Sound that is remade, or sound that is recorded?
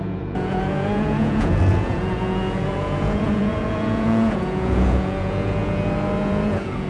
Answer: remade